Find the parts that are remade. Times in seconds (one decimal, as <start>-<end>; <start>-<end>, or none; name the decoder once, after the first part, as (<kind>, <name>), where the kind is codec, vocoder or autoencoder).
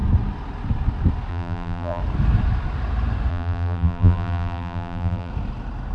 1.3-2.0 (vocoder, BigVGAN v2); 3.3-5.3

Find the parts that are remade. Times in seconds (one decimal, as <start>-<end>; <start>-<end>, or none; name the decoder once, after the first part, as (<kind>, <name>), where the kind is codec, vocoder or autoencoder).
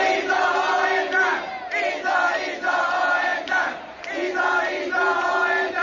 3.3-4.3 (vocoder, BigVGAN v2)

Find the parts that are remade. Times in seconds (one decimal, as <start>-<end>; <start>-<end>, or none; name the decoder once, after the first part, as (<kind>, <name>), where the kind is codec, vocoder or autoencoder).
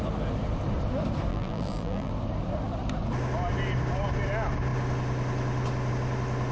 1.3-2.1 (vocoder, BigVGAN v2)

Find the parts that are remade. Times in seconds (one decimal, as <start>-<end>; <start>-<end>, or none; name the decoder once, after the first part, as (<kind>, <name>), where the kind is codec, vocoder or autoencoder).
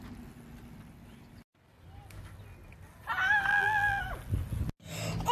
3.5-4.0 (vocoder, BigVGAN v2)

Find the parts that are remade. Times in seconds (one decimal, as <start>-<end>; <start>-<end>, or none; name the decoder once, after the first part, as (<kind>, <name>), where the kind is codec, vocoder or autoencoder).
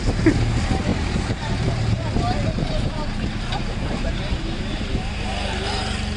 0.9-4.6 (vocoder, BigVGAN v2)